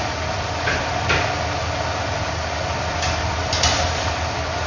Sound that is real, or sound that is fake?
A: real